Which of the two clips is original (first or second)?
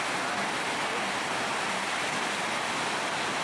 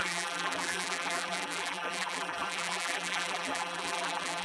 first